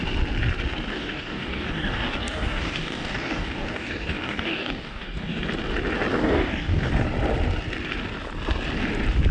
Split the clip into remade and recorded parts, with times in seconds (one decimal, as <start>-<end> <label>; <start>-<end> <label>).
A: 0.0-0.9 recorded; 0.9-5.4 remade; 5.4-6.1 recorded; 6.1-6.9 remade; 6.9-9.3 recorded